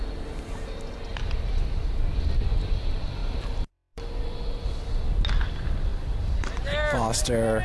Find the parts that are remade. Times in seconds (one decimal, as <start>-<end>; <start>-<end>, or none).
1.1-2.1; 3.2-4.0; 5.9-6.6